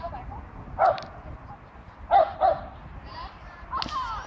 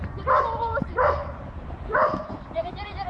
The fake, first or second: second